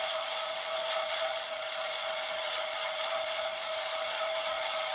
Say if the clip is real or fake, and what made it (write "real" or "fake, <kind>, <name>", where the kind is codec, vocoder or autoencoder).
fake, vocoder, Vocos